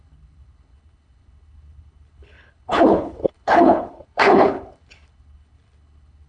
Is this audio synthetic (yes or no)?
yes